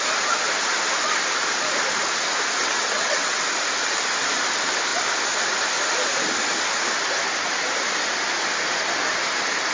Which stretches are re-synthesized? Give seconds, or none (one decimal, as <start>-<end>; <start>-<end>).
2.6-3.4